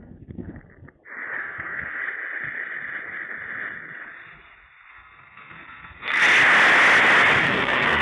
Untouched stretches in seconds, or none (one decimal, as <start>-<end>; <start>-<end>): 0.6-1.4; 2.0-4.9; 6.2-7.4